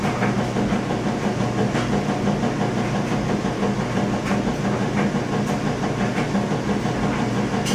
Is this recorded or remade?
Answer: recorded